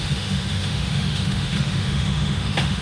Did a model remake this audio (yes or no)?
yes